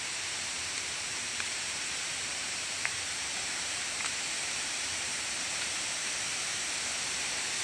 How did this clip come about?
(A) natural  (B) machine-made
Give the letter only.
B